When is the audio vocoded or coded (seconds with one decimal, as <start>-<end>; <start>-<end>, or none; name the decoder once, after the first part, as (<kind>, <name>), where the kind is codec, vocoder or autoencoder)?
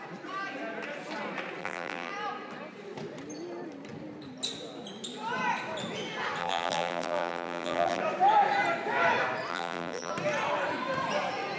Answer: 1.6-2.1 (vocoder, BigVGAN v2); 6.4-8.0; 9.5-10.1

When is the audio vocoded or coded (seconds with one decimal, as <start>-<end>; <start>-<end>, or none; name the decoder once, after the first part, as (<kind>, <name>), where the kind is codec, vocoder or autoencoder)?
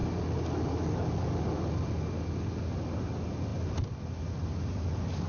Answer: none